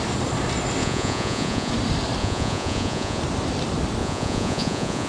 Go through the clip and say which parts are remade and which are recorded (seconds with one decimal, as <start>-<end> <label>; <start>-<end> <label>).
0.0-0.8 recorded; 0.8-1.7 remade; 1.7-2.2 recorded; 2.2-3.2 remade; 3.2-4.0 recorded; 4.0-5.1 remade